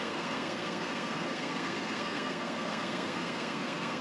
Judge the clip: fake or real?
fake